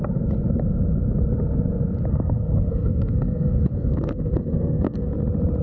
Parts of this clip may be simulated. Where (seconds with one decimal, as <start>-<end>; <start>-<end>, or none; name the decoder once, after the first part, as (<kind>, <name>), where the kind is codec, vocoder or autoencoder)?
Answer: 2.1-5.1 (codec, SNAC)